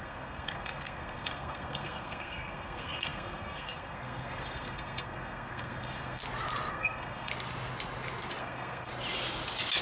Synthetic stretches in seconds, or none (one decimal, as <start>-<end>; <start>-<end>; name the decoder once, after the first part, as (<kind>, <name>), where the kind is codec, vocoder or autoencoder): 0.0-6.2 (codec, SNAC); 6.7-7.3; 8.4-8.9